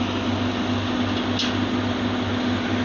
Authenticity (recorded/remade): recorded